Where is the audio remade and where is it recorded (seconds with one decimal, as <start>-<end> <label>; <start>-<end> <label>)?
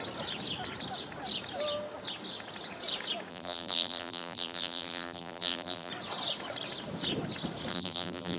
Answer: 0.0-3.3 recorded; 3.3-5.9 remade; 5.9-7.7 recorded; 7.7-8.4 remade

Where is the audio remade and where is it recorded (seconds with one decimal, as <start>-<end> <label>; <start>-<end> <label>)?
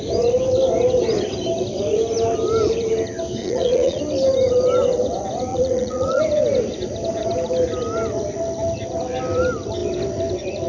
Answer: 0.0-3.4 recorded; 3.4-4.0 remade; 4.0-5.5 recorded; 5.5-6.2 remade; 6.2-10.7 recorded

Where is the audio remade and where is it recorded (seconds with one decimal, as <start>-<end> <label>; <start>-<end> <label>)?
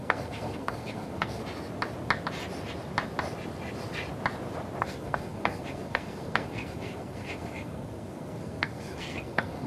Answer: 0.0-1.4 remade; 1.4-4.8 recorded; 4.8-9.7 remade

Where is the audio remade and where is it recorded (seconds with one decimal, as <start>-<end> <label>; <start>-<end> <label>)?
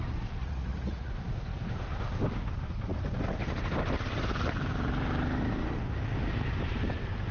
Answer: 0.0-0.4 recorded; 0.4-1.1 remade; 1.1-7.3 recorded